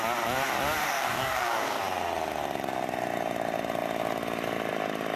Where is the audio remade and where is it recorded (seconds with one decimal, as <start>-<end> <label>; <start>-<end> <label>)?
0.0-0.8 recorded; 0.8-1.8 remade; 1.8-5.2 recorded

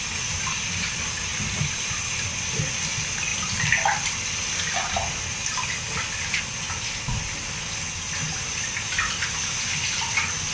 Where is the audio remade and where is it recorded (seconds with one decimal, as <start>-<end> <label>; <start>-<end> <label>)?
0.0-10.5 recorded

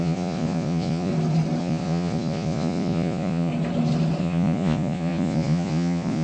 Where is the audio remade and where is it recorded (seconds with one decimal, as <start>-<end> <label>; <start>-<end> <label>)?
0.0-1.1 remade; 1.1-1.6 recorded; 1.6-3.5 remade; 3.5-4.2 recorded; 4.2-6.2 remade

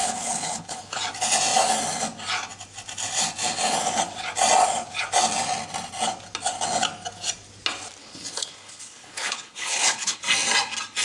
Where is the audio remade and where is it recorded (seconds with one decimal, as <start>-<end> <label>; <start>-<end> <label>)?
0.0-1.0 remade; 1.0-8.0 recorded; 8.0-10.2 remade; 10.2-11.0 recorded